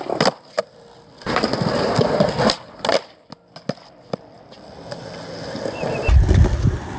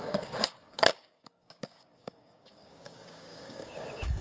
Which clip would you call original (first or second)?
first